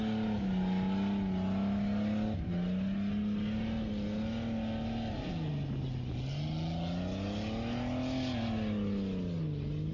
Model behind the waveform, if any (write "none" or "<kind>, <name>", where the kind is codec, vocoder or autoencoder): none